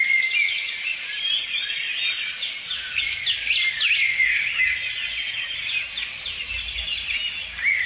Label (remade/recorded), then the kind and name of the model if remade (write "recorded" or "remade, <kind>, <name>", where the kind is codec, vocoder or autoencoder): recorded